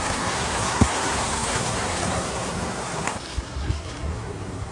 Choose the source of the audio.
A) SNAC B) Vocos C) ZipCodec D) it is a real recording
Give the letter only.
A